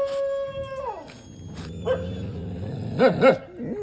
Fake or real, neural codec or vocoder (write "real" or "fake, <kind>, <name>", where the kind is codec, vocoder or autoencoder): real